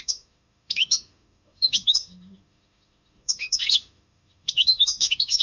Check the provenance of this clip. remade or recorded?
remade